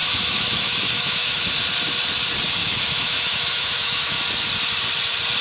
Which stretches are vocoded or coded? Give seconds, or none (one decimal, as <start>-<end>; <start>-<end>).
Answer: 0.0-1.5; 2.6-4.2